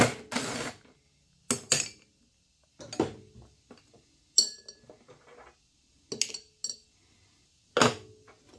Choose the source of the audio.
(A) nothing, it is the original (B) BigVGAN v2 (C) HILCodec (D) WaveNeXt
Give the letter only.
A